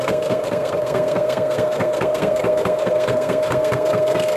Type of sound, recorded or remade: remade